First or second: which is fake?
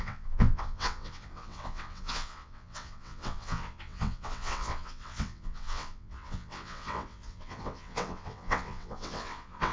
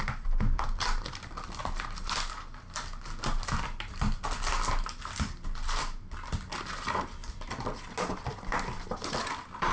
first